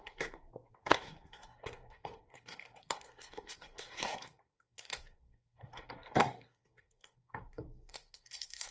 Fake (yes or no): yes